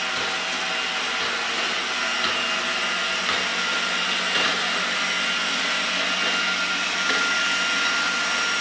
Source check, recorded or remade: recorded